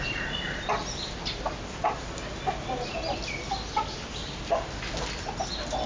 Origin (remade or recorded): recorded